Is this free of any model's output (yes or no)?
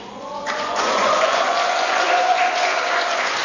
no